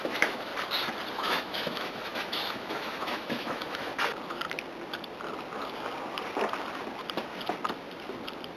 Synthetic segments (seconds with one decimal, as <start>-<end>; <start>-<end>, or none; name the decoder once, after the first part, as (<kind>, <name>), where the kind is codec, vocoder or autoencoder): 0.0-0.5 (autoencoder, DAC-VAE); 1.1-3.9